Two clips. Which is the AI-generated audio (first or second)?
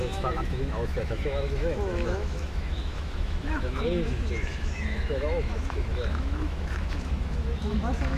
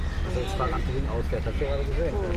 first